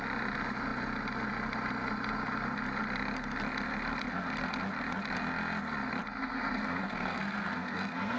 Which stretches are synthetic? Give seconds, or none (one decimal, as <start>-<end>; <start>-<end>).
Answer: 6.2-8.2